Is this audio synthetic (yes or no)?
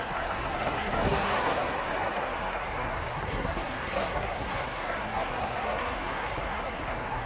yes